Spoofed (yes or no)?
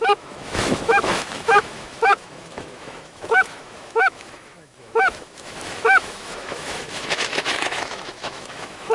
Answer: yes